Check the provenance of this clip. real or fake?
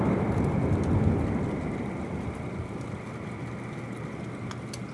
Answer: real